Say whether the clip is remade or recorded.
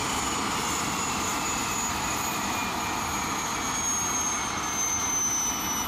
recorded